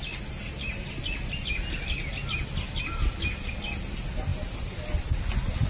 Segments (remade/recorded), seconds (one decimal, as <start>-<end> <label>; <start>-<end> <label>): 0.0-5.7 recorded